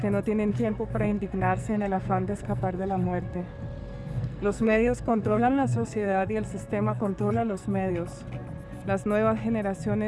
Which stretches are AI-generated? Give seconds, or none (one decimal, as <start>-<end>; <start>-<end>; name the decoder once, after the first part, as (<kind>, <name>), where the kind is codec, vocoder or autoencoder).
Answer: 0.5-3.4 (codec, SNAC); 3.8-7.9